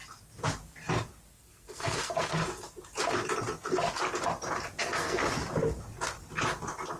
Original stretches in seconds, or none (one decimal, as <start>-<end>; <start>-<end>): 0.0-1.3; 2.4-4.8; 5.2-7.0